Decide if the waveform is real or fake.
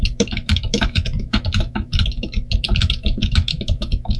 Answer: fake